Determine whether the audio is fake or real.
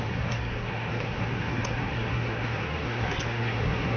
fake